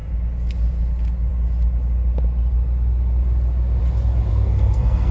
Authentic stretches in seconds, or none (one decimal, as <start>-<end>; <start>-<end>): 0.0-4.3